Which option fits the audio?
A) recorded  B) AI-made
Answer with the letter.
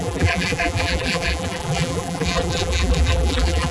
B